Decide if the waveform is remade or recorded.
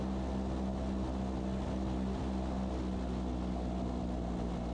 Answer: recorded